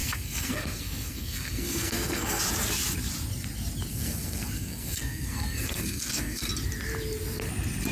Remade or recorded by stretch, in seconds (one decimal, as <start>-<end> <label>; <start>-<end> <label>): 0.0-2.4 remade; 2.4-3.9 recorded; 3.9-6.5 remade; 6.5-7.9 recorded